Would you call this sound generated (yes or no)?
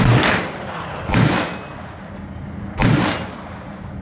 no